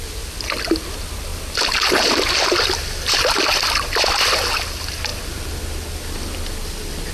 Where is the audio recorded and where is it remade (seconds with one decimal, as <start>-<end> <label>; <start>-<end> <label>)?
0.0-7.1 recorded